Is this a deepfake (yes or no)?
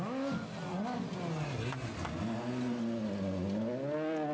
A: no